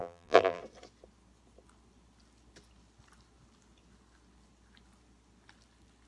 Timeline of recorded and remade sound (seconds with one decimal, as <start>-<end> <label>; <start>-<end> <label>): 0.0-0.6 remade; 0.6-6.1 recorded